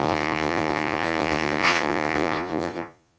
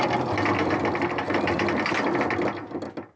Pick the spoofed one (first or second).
first